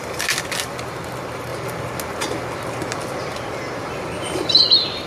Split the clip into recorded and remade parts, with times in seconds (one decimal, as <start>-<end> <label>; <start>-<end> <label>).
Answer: 0.0-5.1 recorded